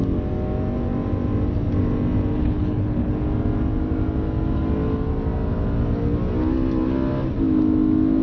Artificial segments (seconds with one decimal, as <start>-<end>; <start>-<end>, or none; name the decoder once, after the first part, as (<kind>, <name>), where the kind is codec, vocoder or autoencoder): 2.4-3.1 (codec, HILCodec)